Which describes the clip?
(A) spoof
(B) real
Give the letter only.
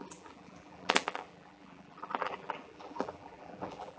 A